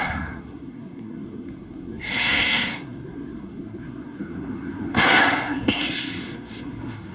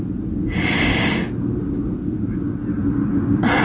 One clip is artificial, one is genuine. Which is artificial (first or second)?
first